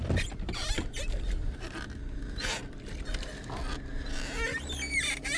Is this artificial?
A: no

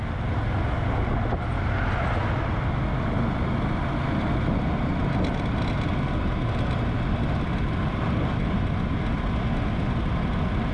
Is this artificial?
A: no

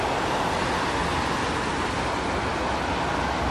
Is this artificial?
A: no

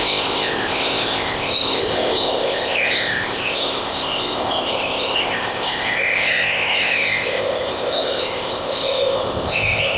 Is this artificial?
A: yes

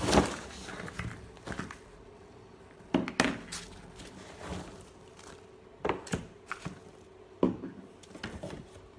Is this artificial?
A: no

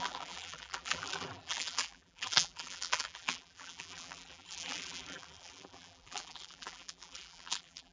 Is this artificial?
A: yes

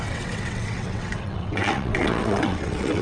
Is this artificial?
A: yes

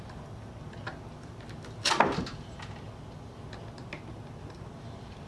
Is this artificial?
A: no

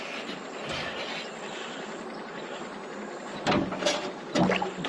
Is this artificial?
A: no